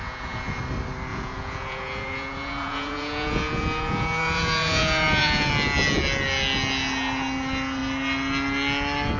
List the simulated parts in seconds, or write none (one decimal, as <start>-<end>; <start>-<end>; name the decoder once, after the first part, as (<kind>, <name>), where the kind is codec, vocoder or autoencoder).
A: 0.0-0.6 (vocoder, Vocos); 1.1-5.5